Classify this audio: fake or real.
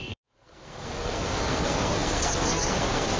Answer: fake